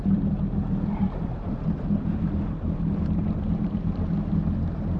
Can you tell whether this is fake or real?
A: fake